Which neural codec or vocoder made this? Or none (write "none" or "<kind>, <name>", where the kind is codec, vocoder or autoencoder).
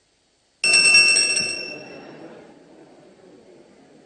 none